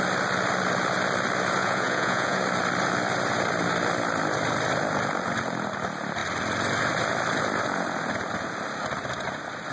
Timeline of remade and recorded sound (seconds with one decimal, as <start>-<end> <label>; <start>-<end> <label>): 0.0-1.6 recorded; 1.6-2.4 remade; 2.4-9.7 recorded